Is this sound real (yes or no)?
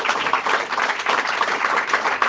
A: yes